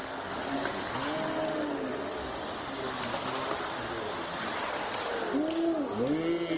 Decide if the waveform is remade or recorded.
recorded